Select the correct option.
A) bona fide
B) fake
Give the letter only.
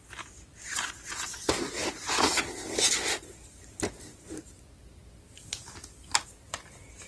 A